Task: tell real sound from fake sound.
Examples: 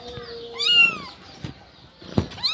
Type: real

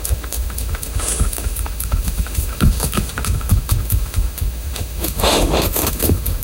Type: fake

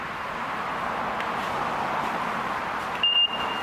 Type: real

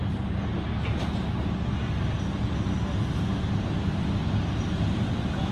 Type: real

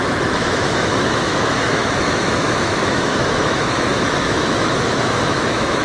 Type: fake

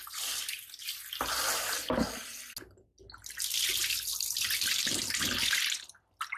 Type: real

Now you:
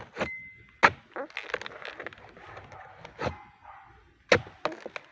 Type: real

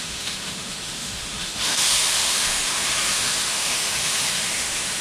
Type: fake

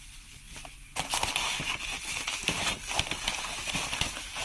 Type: real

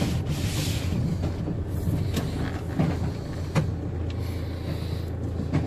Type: real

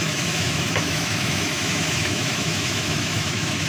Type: fake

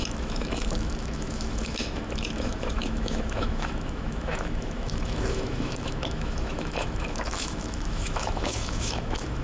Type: fake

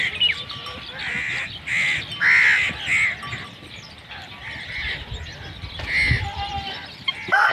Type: real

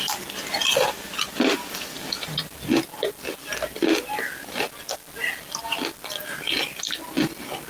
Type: real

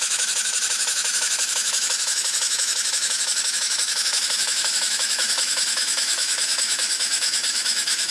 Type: fake